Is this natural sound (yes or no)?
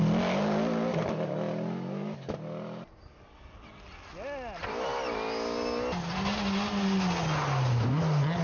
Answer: yes